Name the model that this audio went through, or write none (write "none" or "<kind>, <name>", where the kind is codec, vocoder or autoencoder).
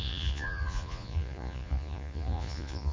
vocoder, Vocos